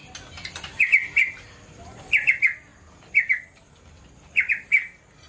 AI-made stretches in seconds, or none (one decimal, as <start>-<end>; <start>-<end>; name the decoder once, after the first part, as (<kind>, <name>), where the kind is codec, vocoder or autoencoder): none